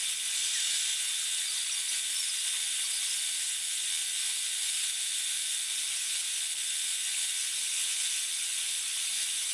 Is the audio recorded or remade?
recorded